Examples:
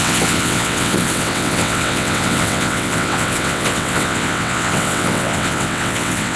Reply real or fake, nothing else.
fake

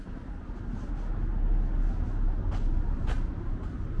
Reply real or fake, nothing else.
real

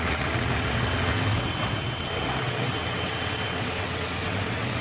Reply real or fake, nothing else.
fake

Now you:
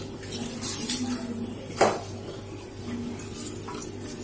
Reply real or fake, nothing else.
real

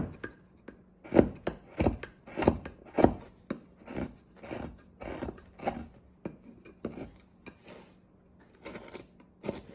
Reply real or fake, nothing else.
real